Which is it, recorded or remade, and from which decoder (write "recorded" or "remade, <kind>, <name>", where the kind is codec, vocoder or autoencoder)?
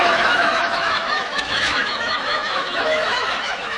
remade, autoencoder, DAC-VAE